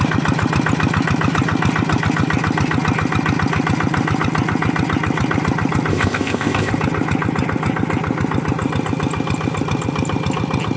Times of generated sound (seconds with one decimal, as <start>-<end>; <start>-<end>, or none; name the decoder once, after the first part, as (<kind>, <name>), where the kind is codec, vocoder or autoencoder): 5.9-6.7 (codec, ZipCodec)